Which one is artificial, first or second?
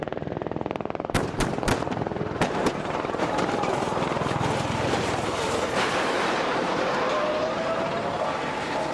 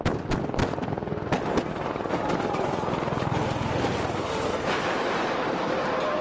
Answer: first